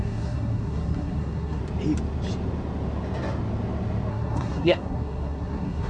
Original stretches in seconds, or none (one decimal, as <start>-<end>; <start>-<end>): 1.6-4.1